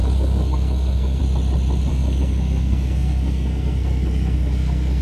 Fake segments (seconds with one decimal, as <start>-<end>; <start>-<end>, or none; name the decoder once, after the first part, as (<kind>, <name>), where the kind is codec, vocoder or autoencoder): 0.0-1.2 (codec, SNAC); 1.9-5.0